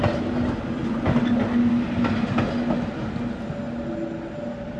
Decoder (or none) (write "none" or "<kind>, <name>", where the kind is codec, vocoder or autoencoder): none